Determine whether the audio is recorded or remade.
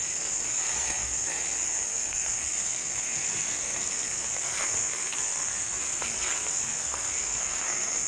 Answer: remade